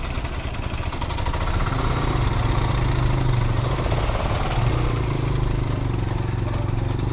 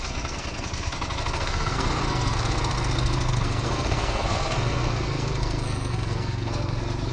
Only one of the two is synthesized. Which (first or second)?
second